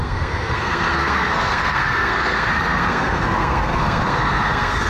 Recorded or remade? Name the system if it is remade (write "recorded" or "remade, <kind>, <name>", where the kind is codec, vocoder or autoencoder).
remade, codec, SNAC